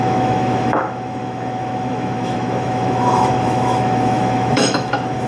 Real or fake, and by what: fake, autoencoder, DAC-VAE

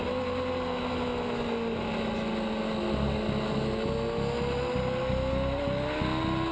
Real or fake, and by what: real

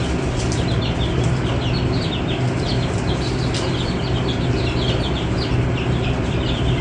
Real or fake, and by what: fake, vocoder, BigVGAN v2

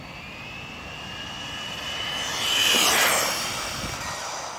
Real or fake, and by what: real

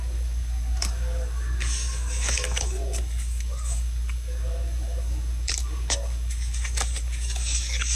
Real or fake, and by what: fake, codec, DAC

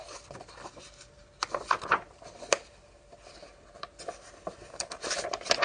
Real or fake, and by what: real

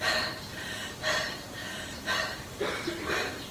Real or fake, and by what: fake, vocoder, BigVGAN v2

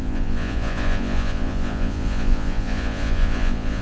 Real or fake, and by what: fake, vocoder, Vocos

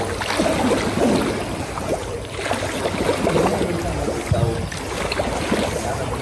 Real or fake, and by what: real